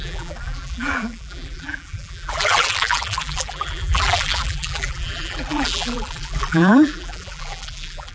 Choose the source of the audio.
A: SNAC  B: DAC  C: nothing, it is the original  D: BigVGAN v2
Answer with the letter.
D